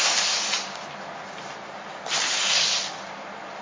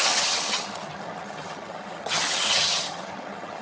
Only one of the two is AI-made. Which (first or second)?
second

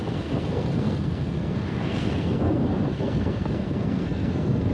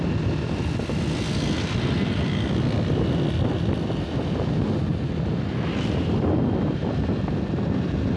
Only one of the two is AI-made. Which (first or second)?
first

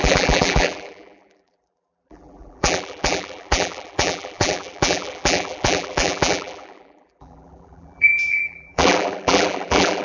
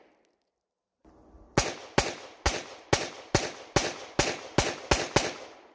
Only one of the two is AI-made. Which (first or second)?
first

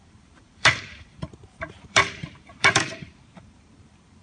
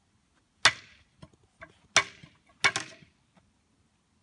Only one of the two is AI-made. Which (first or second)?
first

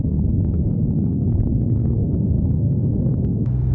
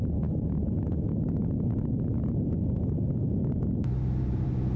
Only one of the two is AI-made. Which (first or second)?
first